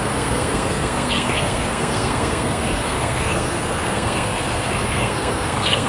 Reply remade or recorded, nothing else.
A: remade